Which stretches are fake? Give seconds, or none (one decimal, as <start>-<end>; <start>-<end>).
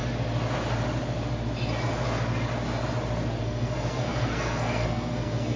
3.4-5.6